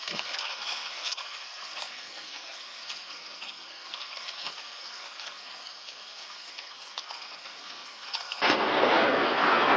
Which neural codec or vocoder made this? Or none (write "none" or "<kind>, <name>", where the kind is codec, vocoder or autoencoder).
codec, SNAC